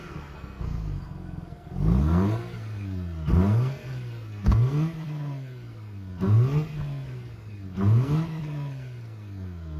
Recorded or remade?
remade